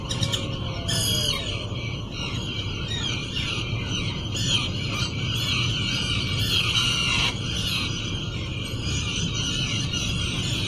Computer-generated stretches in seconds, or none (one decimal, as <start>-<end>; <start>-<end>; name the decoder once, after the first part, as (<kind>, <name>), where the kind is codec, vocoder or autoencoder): 0.0-1.2 (vocoder, Vocos); 1.7-10.7